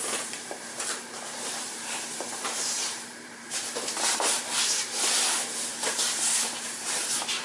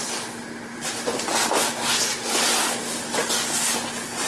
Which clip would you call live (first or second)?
second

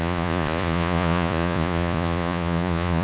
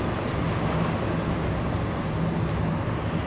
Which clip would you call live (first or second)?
second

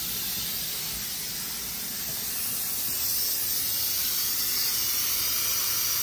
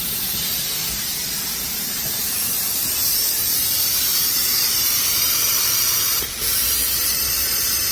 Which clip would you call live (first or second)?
first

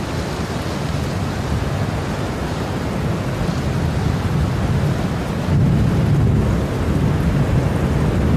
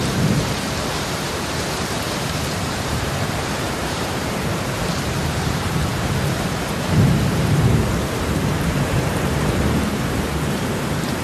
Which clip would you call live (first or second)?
first